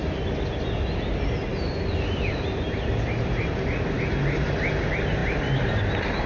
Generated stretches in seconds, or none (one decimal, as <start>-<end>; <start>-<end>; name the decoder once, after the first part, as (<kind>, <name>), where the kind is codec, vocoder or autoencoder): none